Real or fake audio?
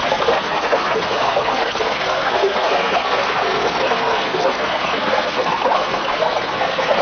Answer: fake